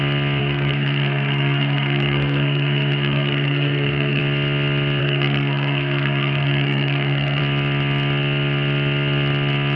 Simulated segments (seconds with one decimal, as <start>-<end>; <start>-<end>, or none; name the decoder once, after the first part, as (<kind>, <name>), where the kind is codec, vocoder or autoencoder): 0.4-4.2 (codec, SNAC); 5.0-7.4